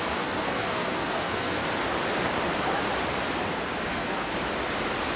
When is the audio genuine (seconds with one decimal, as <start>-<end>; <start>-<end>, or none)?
1.6-3.9; 4.3-5.2